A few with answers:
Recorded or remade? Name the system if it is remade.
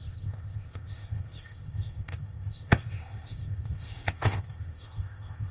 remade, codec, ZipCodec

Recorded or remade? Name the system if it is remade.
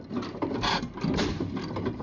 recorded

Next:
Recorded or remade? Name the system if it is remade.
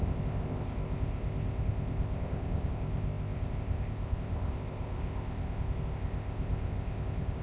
remade, codec, ZipCodec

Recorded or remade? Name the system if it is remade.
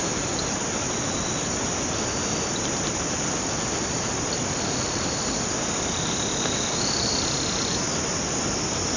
recorded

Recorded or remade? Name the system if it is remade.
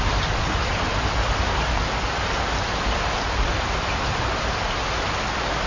recorded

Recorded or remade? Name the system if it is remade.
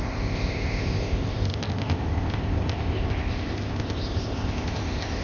remade, codec, ZipCodec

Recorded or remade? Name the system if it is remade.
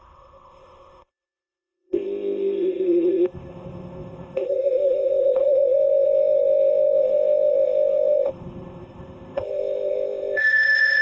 remade, codec, ZipCodec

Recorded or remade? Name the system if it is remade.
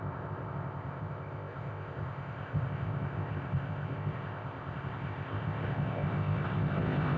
remade, codec, ZipCodec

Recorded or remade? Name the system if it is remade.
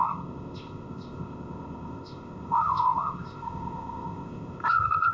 remade, codec, ZipCodec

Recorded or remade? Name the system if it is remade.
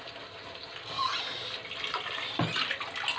recorded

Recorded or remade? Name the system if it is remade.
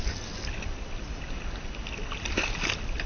recorded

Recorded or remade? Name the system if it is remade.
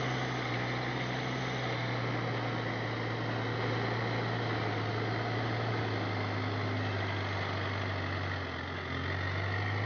recorded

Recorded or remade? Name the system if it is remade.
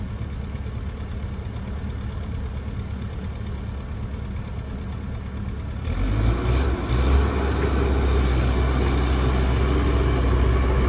recorded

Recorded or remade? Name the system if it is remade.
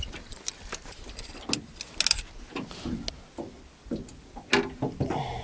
recorded